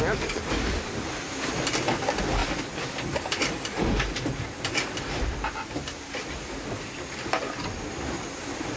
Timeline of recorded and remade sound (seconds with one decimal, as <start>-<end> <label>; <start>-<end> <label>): 0.0-8.8 recorded